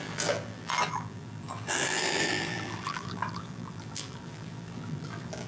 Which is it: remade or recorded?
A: remade